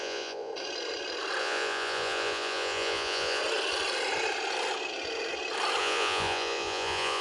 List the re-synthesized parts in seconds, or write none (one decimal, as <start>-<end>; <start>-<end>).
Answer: 0.0-0.5; 1.4-3.4; 5.8-7.2